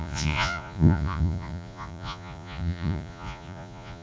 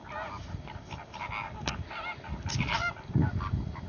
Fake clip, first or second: first